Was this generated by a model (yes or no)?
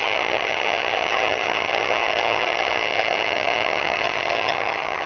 yes